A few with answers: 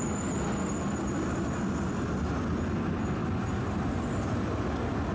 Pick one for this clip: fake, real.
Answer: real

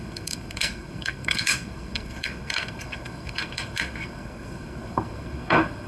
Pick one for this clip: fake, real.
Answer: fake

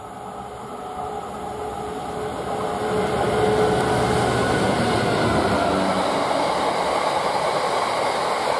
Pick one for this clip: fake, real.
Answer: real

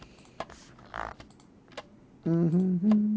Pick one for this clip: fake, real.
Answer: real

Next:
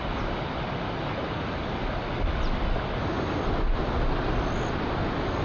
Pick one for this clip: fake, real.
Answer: real